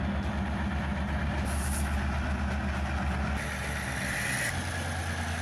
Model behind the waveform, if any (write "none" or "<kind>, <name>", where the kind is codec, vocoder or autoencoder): none